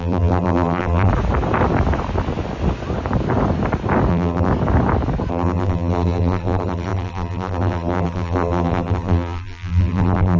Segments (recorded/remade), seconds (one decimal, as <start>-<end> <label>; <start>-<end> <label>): 0.0-1.1 remade; 1.1-4.1 recorded; 4.1-4.5 remade; 4.5-5.3 recorded; 5.3-10.4 remade